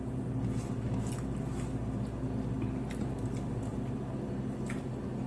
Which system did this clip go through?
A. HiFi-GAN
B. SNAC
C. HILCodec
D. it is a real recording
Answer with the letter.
D